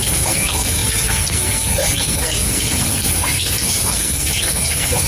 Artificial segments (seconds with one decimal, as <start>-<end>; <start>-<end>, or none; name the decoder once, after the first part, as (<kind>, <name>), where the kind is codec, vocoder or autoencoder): 0.0-5.1 (codec, SNAC)